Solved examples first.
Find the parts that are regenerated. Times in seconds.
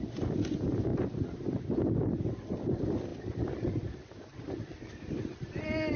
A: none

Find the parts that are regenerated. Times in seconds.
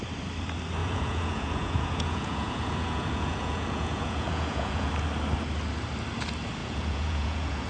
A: 0.8-4.9 (vocoder, Vocos); 6.6-7.7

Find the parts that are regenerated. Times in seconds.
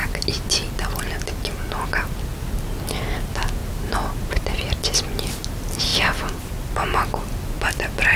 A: none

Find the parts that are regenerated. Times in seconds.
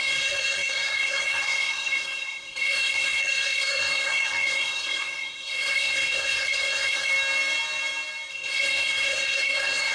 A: 0.0-7.1 (codec, SNAC); 8.3-9.9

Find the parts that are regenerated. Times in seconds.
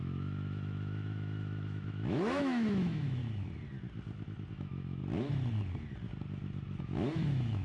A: 0.0-3.2 (autoencoder, DAC-VAE); 4.5-5.0; 6.8-7.6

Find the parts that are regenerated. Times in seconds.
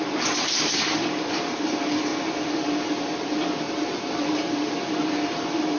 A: 0.0-5.8 (vocoder, BigVGAN v2)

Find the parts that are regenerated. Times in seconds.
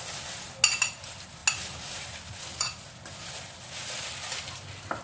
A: none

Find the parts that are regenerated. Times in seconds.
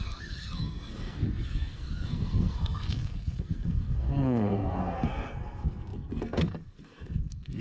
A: 0.0-7.6 (codec, SNAC)